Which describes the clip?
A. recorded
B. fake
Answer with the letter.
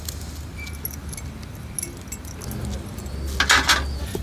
A